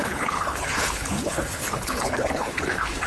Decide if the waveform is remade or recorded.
remade